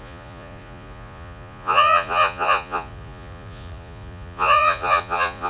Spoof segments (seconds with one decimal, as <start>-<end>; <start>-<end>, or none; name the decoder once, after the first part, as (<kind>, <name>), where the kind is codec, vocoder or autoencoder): 0.0-5.5 (vocoder, Vocos)

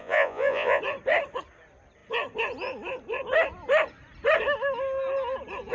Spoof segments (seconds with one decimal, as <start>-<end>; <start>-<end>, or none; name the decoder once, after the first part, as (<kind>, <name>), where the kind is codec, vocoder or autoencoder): 0.0-0.8 (vocoder, Vocos)

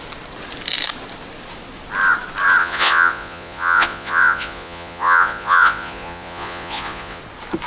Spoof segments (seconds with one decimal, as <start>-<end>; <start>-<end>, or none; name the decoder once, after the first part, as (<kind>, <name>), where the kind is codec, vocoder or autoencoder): 2.6-7.2 (vocoder, Vocos)